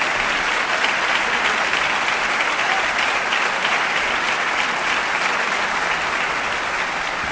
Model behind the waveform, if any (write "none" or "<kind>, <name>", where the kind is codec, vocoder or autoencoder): none